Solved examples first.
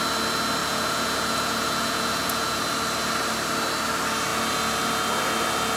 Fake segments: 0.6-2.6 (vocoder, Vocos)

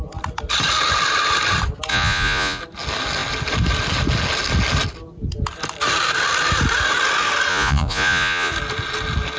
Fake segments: 1.9-2.6 (vocoder, Vocos); 7.5-8.5